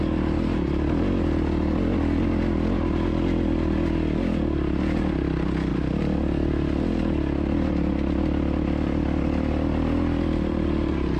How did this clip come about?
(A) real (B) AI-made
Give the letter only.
A